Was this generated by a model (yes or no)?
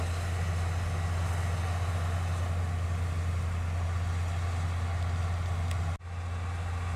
no